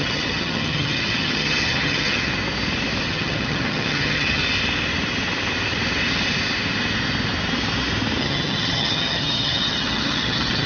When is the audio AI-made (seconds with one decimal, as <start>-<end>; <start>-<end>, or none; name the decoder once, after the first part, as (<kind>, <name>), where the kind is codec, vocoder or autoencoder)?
0.0-2.3 (vocoder, HiFi-GAN); 3.0-4.4; 8.2-10.7